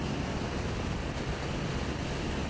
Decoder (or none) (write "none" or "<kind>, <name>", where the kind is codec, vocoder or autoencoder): none